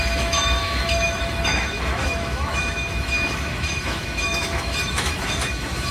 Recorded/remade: remade